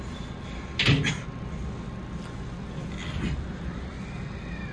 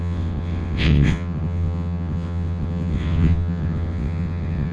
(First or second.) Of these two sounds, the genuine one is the first